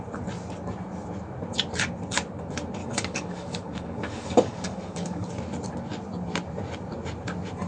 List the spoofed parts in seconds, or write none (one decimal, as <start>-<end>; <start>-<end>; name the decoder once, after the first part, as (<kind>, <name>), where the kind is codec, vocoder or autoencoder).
2.8-5.3 (codec, DAC)